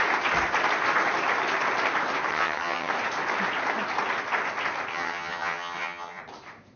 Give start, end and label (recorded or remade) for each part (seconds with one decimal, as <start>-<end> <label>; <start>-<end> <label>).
0.0-2.3 recorded; 2.3-2.9 remade; 2.9-4.9 recorded; 4.9-6.2 remade; 6.2-6.8 recorded